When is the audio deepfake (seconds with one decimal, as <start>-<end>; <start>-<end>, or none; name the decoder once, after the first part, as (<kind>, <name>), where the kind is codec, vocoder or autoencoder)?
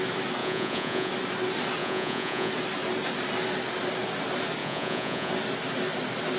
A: 0.4-1.1 (vocoder, Vocos); 1.8-2.5; 4.6-5.3